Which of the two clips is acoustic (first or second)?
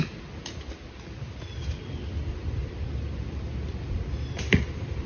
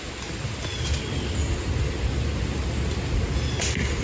second